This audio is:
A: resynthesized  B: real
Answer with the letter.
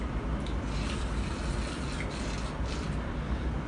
B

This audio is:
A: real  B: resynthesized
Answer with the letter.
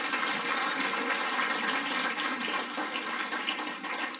A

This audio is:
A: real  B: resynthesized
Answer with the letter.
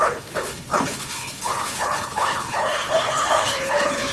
B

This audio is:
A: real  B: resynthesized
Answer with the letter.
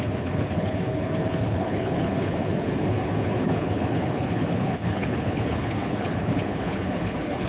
B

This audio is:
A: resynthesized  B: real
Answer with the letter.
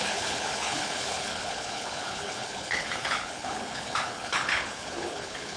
A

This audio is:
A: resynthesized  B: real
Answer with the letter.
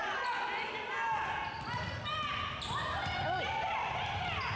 B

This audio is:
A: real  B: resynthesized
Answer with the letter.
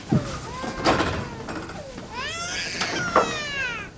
A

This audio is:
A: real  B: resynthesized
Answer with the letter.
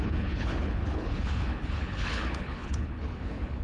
B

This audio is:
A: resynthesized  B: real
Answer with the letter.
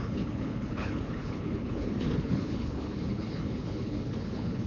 A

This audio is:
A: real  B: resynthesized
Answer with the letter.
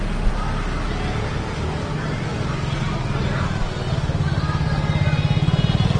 A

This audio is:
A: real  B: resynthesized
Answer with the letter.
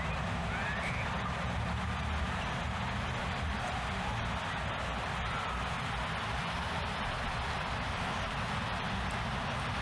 A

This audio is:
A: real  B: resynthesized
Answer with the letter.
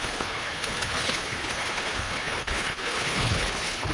B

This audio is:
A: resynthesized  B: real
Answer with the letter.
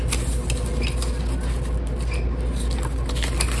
B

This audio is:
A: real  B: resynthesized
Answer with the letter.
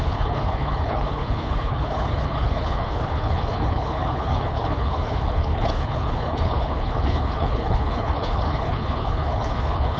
B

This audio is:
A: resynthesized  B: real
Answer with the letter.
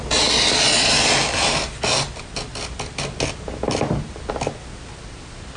B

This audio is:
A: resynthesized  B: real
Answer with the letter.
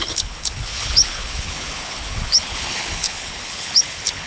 A